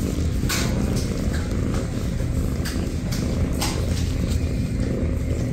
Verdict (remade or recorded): recorded